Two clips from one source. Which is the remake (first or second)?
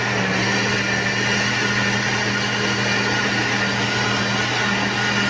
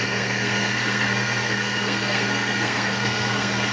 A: second